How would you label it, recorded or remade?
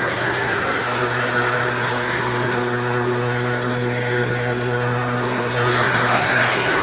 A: remade